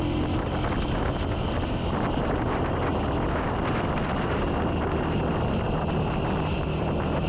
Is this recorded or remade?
recorded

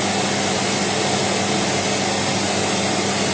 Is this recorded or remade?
recorded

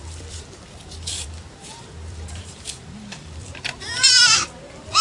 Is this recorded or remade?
remade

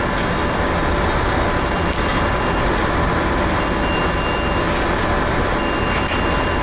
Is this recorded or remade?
recorded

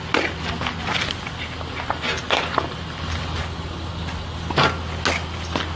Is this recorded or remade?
recorded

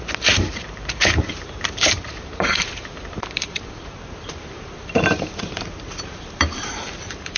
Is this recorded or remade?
remade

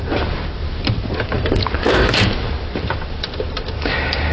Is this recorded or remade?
remade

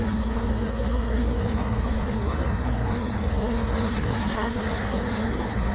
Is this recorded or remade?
remade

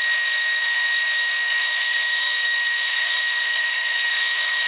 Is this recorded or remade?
remade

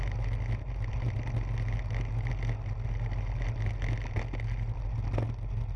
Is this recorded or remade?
recorded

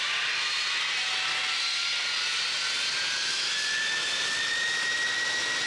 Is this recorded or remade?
recorded